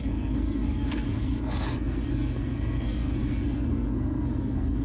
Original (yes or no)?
no